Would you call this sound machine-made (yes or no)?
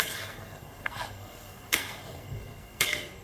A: yes